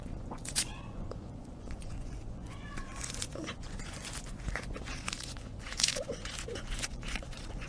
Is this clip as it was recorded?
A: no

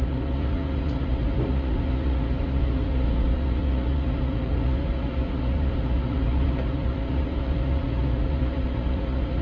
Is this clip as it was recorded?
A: no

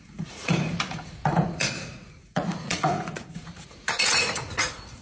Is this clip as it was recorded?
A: no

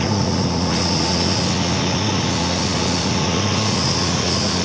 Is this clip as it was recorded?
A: no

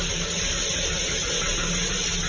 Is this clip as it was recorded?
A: yes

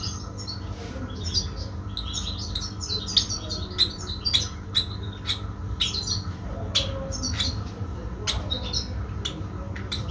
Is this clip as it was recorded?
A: yes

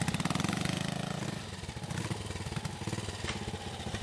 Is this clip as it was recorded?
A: yes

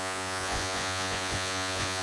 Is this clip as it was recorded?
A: no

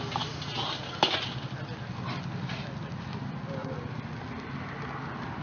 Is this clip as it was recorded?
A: yes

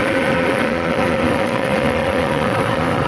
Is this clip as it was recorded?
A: no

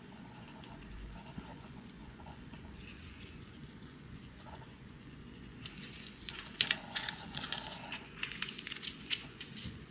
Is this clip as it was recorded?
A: no